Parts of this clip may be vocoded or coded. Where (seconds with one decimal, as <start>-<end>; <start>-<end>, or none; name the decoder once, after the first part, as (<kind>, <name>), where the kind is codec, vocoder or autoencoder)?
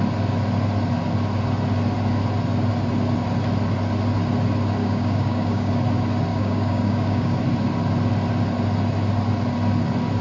4.8-5.7 (codec, DAC); 6.3-7.4